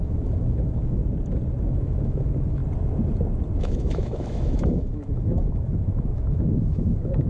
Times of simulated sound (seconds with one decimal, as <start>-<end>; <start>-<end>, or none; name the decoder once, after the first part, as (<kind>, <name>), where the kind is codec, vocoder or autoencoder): 0.0-1.0 (autoencoder, DAC-VAE); 1.6-2.6; 3.6-7.3